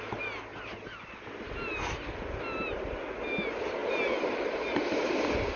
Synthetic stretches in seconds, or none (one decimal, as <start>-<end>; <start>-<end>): none